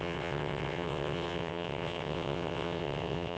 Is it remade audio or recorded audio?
remade